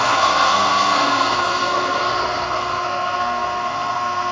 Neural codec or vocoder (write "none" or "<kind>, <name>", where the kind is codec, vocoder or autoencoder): codec, SNAC